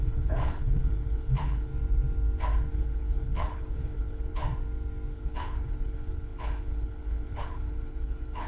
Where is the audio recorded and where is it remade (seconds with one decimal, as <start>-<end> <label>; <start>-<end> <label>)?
0.0-1.7 remade; 1.7-2.7 recorded; 2.7-4.4 remade; 4.4-5.1 recorded; 5.1-8.5 remade

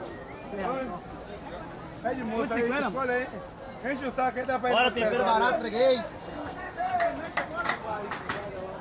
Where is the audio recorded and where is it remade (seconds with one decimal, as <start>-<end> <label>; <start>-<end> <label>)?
0.0-6.2 recorded; 6.2-6.9 remade; 6.9-8.8 recorded

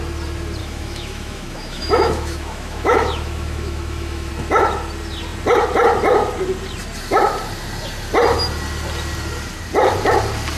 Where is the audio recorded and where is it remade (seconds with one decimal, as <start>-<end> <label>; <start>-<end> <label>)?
0.0-0.6 recorded; 0.6-4.3 remade; 4.3-10.6 recorded

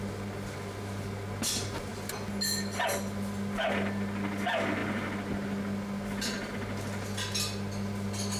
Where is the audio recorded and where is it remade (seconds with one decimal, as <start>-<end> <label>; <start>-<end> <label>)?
0.0-8.4 recorded